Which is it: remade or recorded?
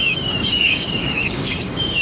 remade